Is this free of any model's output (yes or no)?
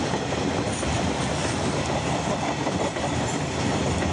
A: yes